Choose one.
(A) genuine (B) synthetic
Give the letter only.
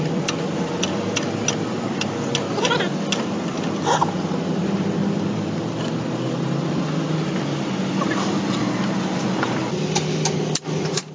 A